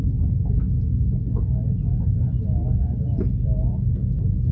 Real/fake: real